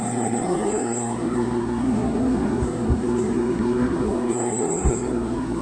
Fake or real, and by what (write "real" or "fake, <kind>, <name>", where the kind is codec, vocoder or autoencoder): fake, codec, SNAC